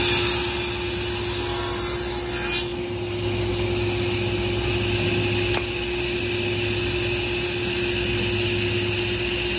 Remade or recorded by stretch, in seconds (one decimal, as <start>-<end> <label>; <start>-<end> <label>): 0.0-9.6 recorded